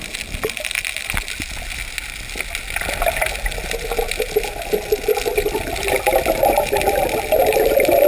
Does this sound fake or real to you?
real